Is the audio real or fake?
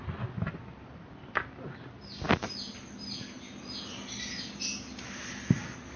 real